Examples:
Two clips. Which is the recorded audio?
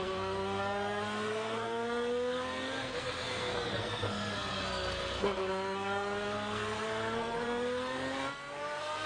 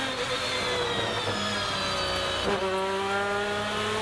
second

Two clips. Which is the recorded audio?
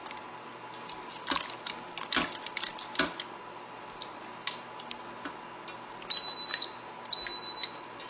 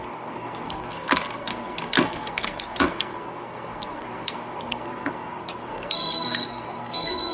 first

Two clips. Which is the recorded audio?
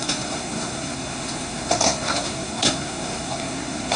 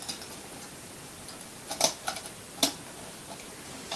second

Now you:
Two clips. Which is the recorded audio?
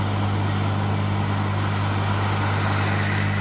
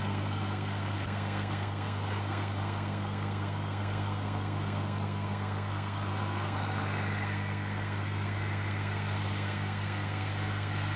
first